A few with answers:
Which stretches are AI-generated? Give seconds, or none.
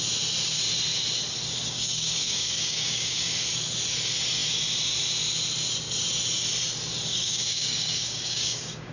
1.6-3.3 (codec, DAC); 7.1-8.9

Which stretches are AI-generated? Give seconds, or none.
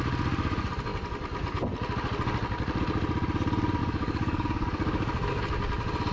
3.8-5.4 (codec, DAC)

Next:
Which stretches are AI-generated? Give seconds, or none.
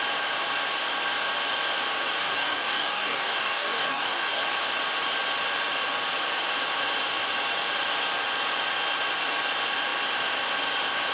2.2-4.4 (codec, DAC)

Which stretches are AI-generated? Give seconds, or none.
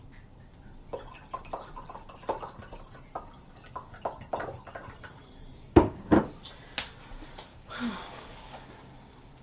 5.5-6.1 (codec, DAC); 7.5-8.7